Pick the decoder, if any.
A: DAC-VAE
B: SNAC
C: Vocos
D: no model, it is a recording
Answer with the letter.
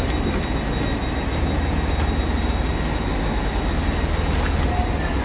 D